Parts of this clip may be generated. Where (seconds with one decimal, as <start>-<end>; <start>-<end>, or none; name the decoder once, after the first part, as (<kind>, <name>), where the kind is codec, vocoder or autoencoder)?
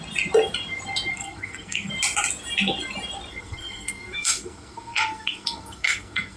1.1-1.9 (codec, SNAC); 3.3-6.4